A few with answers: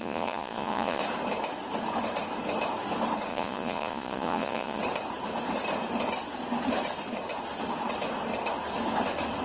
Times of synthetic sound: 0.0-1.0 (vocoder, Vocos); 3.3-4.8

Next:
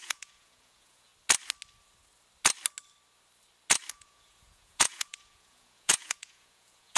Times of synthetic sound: 0.0-1.1 (vocoder, Vocos); 3.9-7.0

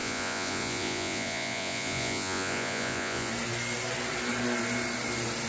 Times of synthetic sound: 0.0-3.3 (vocoder, Vocos)